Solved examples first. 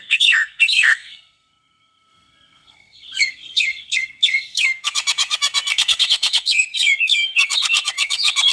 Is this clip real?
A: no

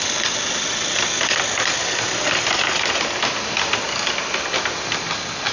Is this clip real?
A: yes